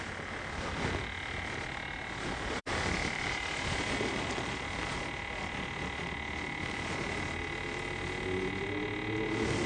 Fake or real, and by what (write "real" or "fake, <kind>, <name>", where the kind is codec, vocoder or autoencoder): real